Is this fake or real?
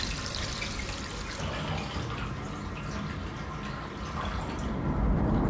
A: real